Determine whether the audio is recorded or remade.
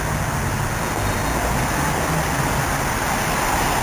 recorded